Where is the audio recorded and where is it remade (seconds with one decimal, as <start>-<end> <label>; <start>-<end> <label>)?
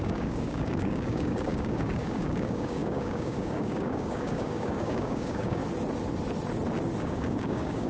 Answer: 0.0-5.6 remade; 5.6-7.0 recorded; 7.0-7.9 remade